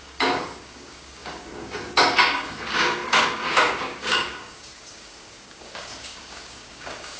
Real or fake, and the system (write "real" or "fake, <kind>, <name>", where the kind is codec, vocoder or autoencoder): fake, codec, DAC